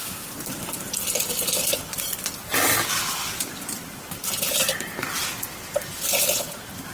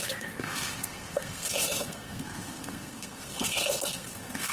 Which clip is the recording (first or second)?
first